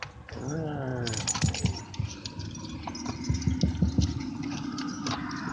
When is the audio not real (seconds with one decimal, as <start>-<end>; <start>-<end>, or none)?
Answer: none